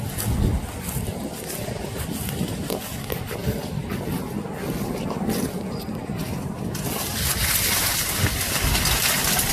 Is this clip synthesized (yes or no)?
no